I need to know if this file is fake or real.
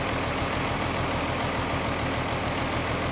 real